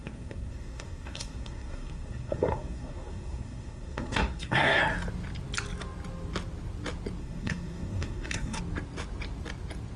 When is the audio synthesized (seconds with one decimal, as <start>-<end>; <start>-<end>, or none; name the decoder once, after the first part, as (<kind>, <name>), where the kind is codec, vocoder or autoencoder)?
0.0-4.8 (codec, SNAC); 7.2-8.6